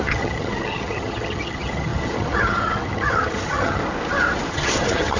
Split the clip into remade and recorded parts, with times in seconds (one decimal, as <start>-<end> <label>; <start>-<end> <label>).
0.0-3.8 remade; 3.8-4.5 recorded; 4.5-5.2 remade